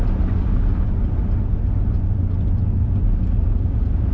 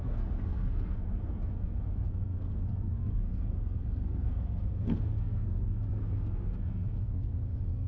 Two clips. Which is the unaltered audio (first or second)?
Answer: first